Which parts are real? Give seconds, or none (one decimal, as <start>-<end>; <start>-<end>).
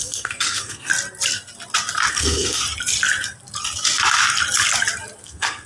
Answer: 0.9-2.1; 2.6-5.2